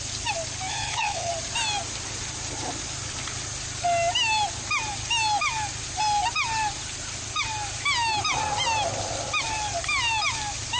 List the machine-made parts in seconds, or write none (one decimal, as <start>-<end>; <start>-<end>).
0.7-1.3